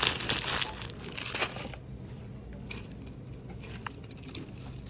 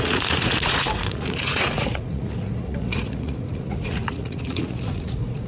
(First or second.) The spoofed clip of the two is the second